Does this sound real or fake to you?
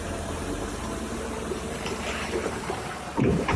fake